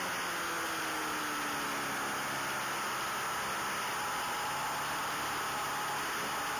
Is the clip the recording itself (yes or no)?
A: yes